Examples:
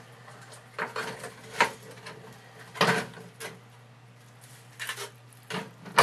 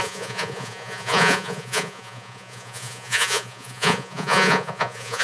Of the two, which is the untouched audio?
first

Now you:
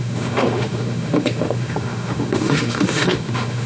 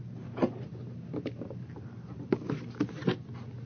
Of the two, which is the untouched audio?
second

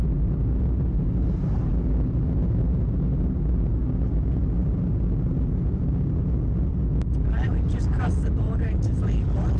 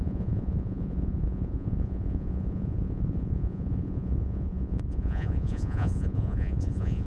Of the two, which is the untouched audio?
first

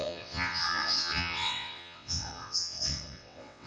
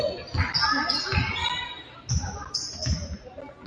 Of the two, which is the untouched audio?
second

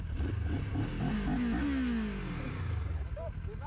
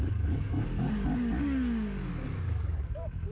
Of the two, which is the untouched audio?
first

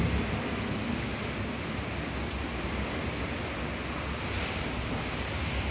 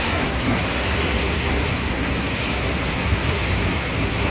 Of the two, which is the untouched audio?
first